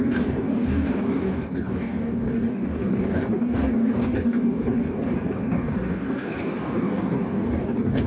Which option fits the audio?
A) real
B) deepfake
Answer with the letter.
B